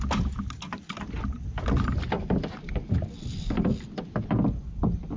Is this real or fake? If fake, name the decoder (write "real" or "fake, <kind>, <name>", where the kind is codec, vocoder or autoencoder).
real